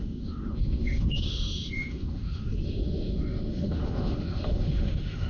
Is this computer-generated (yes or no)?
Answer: yes